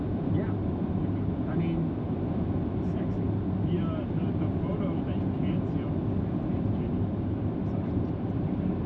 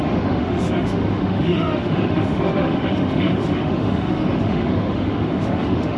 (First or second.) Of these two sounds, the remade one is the second